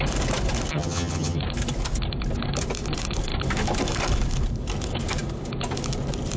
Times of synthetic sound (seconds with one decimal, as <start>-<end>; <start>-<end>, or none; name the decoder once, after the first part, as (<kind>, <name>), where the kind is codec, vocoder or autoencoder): 0.7-1.4 (vocoder, HiFi-GAN)